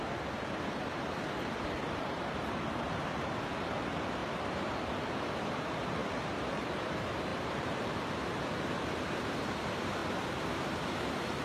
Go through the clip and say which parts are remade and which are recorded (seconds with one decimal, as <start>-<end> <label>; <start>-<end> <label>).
0.0-11.4 remade